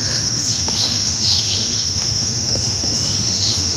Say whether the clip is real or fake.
fake